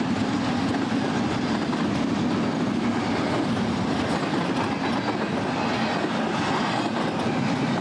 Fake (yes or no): no